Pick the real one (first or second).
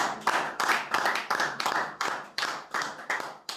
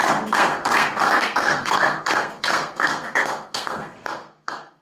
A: first